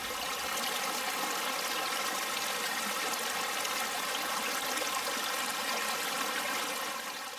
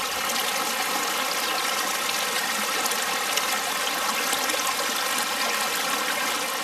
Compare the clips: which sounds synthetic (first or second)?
first